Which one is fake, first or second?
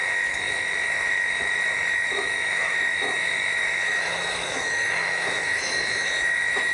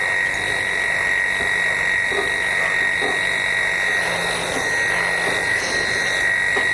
first